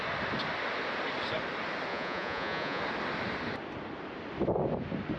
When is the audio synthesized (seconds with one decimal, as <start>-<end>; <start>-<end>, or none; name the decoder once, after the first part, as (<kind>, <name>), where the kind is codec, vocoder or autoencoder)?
1.9-2.8 (vocoder, Vocos)